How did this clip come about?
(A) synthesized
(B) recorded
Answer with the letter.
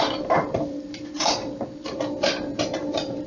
A